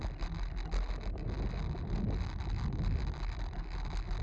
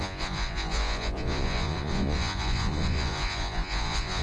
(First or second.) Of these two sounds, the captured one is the first